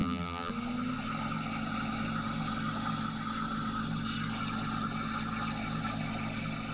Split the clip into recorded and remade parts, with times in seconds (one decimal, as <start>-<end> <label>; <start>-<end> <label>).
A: 0.0-0.5 remade; 0.5-6.7 recorded